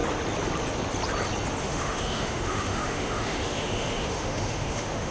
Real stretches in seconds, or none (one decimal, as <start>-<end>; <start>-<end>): 0.0-1.6